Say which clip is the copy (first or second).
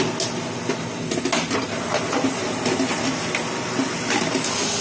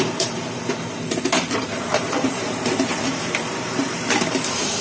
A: second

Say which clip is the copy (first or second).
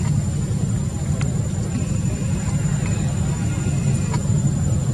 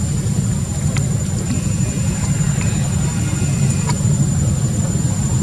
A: first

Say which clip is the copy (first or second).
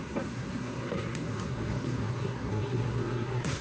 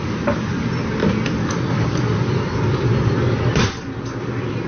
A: first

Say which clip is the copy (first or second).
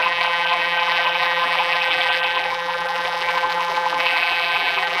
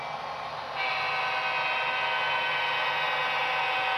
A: first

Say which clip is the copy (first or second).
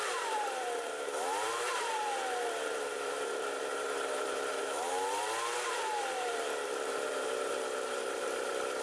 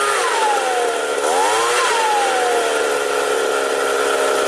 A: first